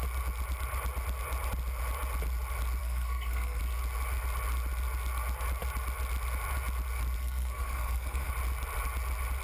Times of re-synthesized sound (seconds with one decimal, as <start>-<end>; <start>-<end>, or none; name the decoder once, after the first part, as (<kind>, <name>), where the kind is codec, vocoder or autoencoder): 2.8-3.6 (codec, SNAC); 7.2-8.3